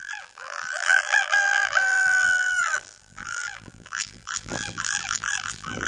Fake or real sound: fake